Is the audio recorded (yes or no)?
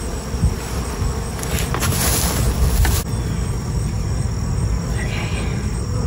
yes